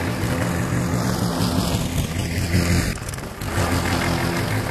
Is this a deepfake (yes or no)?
no